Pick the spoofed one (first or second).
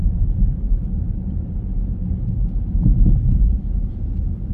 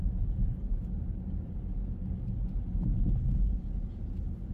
first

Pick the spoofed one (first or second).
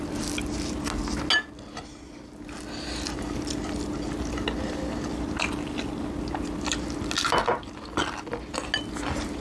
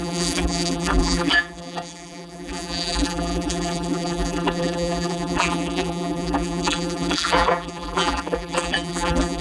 second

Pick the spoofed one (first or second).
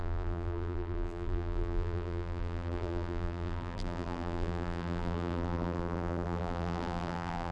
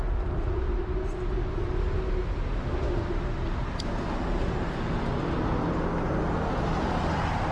first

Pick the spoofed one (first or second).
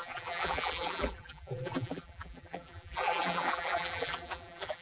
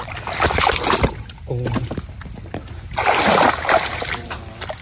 first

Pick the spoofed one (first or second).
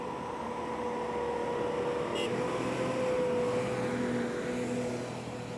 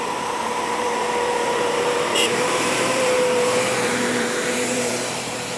second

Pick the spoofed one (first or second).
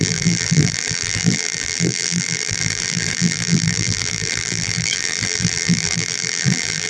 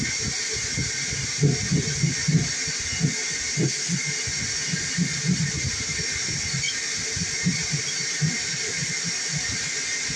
first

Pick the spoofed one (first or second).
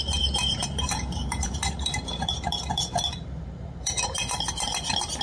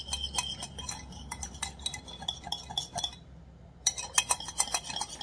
first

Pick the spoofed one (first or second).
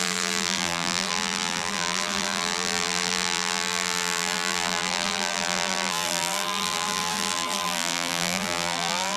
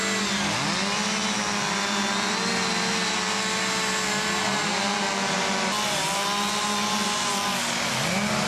first